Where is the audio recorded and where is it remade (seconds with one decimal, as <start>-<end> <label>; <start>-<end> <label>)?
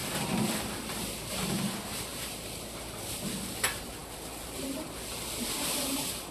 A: 0.0-1.1 remade; 1.1-2.1 recorded; 2.1-3.3 remade; 3.3-4.0 recorded; 4.0-5.4 remade; 5.4-6.3 recorded